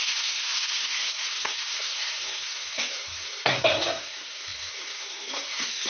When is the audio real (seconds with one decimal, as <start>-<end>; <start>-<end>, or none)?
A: none